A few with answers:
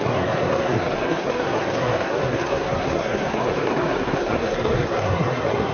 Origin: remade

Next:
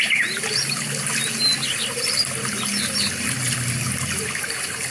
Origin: recorded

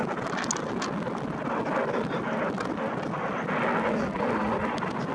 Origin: recorded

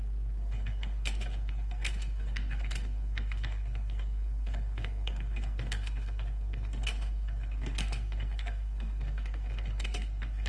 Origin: remade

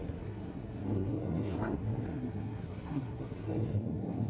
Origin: remade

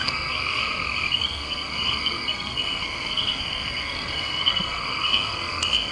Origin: remade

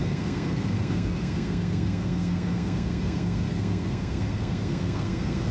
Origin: remade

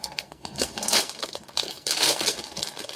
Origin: remade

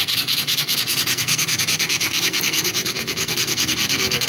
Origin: remade